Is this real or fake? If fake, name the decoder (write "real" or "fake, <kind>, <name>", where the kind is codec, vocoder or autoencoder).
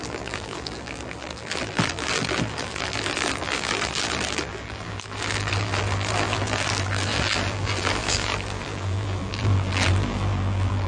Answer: fake, vocoder, BigVGAN v2